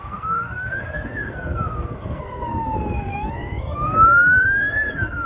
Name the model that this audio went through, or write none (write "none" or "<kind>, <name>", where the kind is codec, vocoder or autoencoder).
codec, SNAC